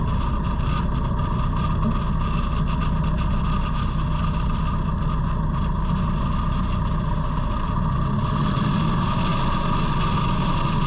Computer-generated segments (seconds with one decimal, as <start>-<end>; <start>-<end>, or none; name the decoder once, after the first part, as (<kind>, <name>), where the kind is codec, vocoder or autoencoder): none